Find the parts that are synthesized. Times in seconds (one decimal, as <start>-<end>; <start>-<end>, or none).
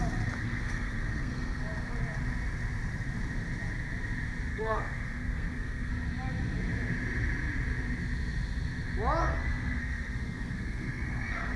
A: 0.4-1.6; 4.5-5.9; 9.2-11.6